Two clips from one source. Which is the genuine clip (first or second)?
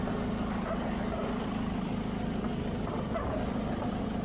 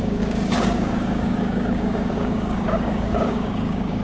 first